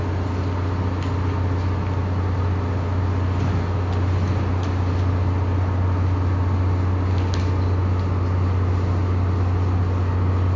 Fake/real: real